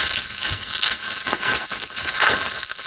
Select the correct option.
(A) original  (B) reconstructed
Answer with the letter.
B